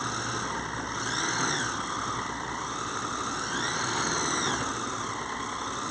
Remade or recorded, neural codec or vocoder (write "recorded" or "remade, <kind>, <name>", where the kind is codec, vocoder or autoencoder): recorded